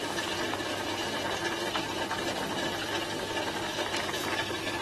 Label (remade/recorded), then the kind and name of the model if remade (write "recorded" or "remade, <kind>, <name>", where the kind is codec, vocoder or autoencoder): recorded